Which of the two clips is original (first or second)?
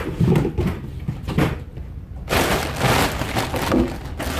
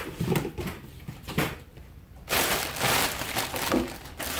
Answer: first